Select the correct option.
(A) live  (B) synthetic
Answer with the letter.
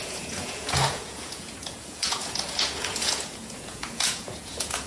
B